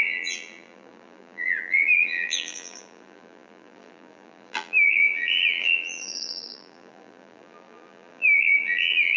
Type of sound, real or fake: fake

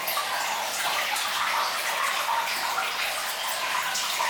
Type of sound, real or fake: real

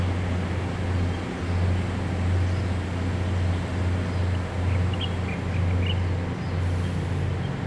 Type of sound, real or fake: real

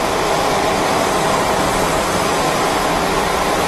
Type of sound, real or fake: fake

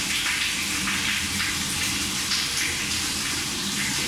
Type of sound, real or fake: fake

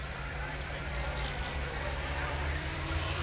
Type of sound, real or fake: fake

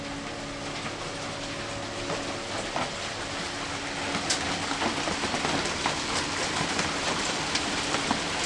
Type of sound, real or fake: real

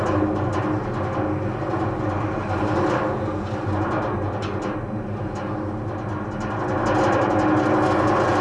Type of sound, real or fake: real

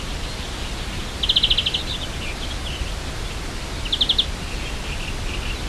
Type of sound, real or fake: real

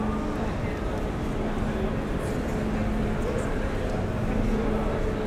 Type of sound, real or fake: real